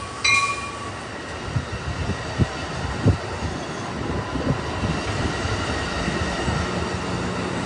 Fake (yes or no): no